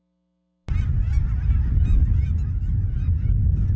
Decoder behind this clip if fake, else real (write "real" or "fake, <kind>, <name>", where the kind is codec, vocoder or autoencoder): real